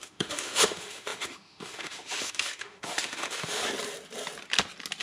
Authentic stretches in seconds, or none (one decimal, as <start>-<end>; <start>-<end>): 3.6-5.0